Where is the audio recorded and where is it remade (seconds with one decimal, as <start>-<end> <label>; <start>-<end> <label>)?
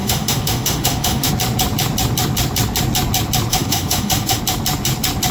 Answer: 0.0-1.3 remade; 1.3-3.5 recorded; 3.5-4.4 remade; 4.4-5.3 recorded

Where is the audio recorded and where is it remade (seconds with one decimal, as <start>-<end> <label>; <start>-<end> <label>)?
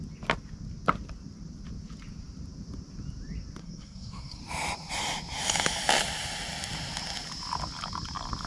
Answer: 0.0-3.6 recorded; 3.6-4.4 remade; 4.4-8.5 recorded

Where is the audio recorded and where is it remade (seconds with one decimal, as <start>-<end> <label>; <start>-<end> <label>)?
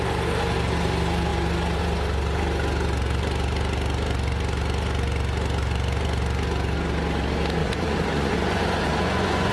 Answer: 0.0-7.6 recorded; 7.6-9.5 remade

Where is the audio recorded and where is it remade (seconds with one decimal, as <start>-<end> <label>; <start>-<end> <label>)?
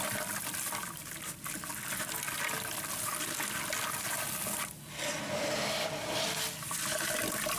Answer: 0.0-7.6 recorded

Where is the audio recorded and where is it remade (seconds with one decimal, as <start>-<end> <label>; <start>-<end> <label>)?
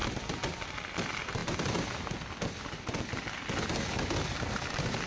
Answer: 0.0-5.1 recorded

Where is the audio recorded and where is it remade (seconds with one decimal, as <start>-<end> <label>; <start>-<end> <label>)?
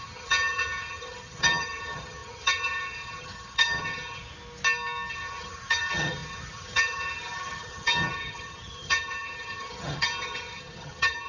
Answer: 0.0-4.2 remade; 4.2-5.1 recorded; 5.1-11.3 remade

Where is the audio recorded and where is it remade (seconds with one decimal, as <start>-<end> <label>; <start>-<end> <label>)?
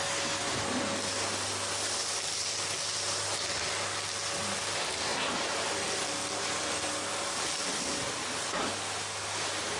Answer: 0.0-9.8 recorded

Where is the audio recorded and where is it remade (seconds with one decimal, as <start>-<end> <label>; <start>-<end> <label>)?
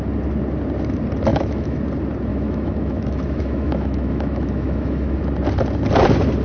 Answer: 0.0-1.3 recorded; 1.3-1.8 remade; 1.8-2.3 recorded; 2.3-5.2 remade; 5.2-6.4 recorded